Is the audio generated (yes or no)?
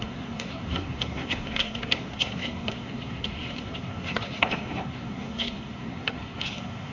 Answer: yes